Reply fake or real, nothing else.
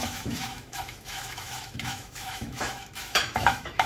fake